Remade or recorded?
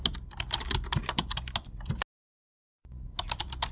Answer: recorded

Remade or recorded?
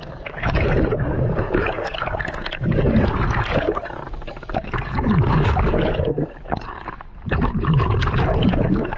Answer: remade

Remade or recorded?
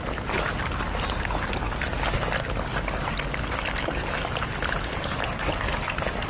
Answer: recorded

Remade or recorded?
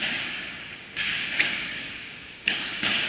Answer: remade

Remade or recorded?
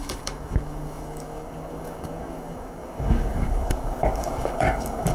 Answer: remade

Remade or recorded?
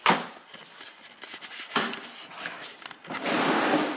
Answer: recorded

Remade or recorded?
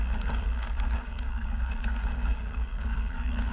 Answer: remade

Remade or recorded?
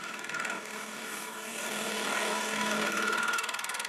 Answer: remade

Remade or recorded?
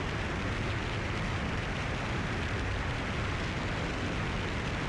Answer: recorded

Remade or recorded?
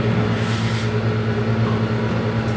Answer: recorded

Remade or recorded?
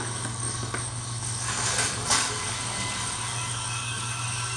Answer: remade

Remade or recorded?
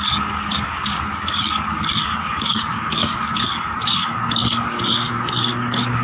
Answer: remade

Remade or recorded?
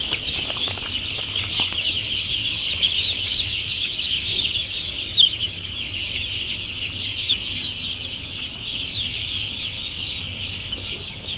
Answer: remade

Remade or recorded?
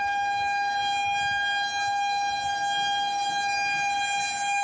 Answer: recorded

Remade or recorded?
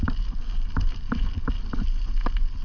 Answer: recorded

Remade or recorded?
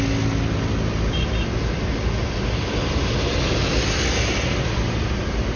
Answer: recorded